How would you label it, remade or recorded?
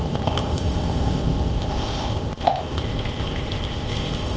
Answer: remade